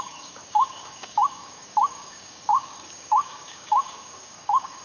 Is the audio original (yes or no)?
no